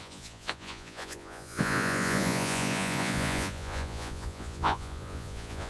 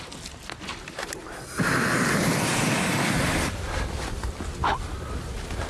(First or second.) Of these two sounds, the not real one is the first